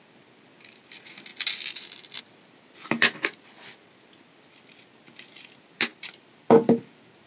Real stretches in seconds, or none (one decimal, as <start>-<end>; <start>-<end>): 0.0-7.3